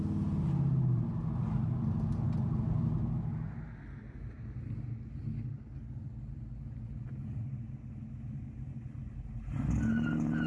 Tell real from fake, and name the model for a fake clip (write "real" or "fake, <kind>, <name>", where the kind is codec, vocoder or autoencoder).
real